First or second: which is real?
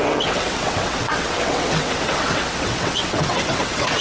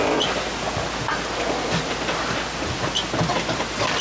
second